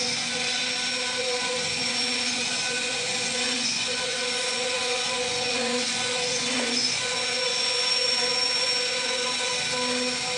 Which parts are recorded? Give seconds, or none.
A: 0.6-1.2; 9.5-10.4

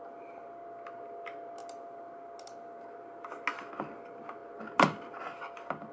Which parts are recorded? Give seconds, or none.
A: 0.0-5.9